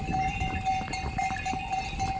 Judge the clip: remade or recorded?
recorded